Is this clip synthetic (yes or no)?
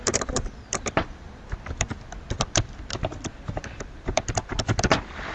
yes